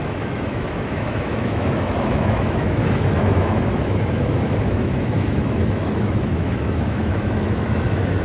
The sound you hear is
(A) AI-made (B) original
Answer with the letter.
A